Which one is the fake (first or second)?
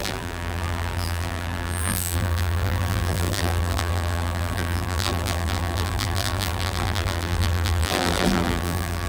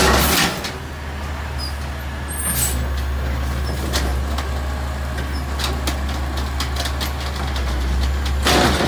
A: first